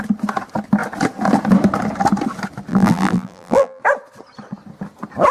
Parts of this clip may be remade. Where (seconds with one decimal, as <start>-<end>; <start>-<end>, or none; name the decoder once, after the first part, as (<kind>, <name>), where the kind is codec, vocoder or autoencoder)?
2.7-3.8 (vocoder, BigVGAN v2)